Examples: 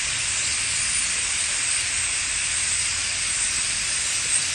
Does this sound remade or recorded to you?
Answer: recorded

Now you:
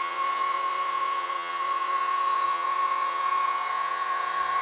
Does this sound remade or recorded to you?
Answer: remade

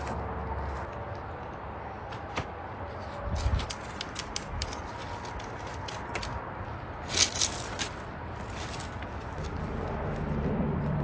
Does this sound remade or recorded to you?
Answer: recorded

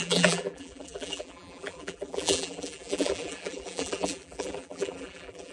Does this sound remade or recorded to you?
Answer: remade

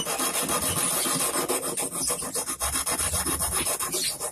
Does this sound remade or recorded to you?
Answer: recorded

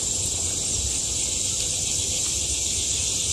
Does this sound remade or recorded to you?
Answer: recorded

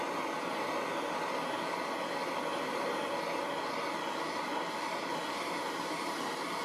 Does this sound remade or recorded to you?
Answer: recorded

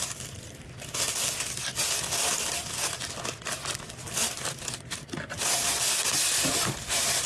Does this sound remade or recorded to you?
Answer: recorded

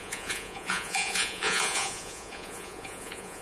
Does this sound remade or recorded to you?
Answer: remade